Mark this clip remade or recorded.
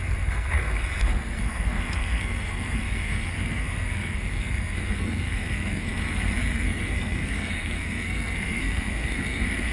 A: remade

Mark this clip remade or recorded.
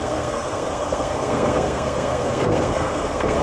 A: remade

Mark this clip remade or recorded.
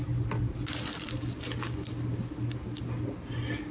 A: recorded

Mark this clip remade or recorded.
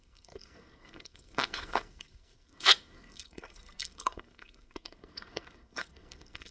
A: remade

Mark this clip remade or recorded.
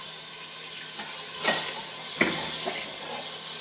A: recorded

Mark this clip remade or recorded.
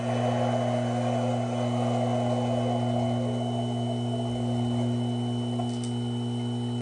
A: recorded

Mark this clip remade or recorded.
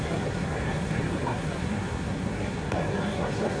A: remade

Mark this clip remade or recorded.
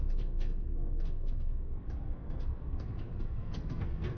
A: remade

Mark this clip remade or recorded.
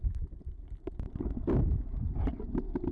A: recorded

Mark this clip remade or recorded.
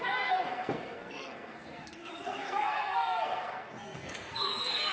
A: remade